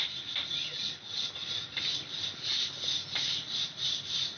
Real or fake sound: real